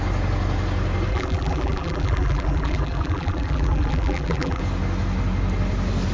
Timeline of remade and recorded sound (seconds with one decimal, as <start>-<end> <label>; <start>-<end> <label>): 0.0-1.1 recorded; 1.1-4.6 remade; 4.6-6.1 recorded